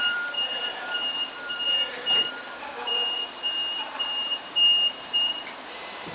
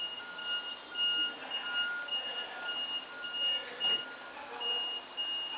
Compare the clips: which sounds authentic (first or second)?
second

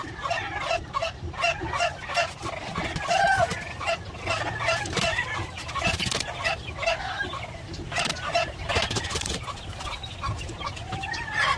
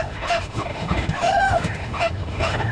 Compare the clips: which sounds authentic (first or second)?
first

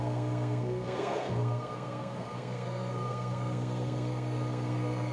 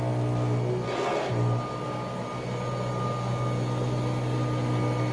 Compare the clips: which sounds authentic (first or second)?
second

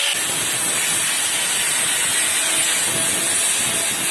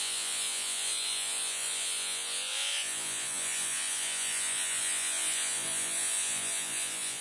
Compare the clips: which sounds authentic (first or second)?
first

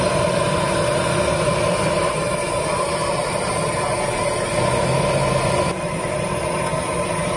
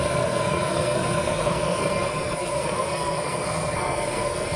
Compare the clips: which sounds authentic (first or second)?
first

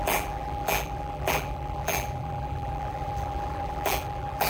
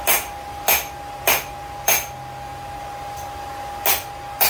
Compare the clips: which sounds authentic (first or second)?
second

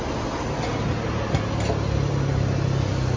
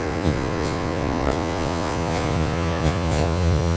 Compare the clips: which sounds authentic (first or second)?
first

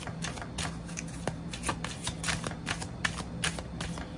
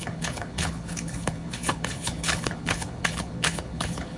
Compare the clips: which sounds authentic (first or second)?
first